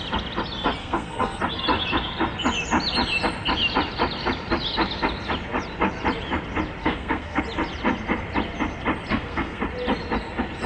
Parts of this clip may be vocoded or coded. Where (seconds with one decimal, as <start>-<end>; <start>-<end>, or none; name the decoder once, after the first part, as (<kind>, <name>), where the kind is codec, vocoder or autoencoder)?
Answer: 0.8-1.4 (codec, SNAC); 6.8-7.4; 9.1-9.6